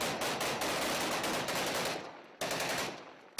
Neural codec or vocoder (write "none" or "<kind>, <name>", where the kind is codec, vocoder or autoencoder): none